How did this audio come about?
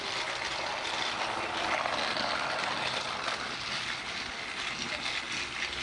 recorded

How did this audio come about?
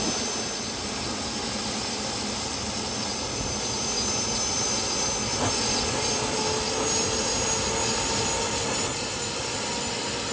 recorded